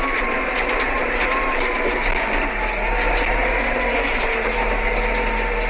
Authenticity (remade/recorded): recorded